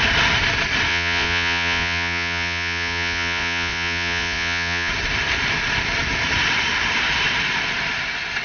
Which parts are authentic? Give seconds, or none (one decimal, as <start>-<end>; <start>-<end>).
0.0-0.9; 4.9-8.4